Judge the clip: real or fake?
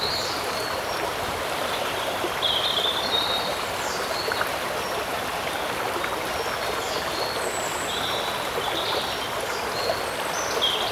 real